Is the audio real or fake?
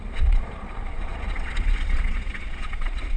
fake